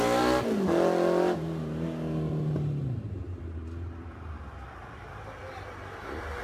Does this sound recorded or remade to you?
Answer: recorded